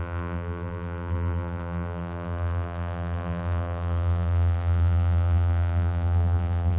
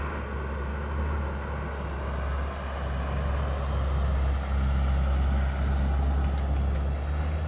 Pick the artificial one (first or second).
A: first